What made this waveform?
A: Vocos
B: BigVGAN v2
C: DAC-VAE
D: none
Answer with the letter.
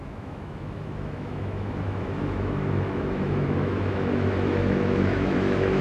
C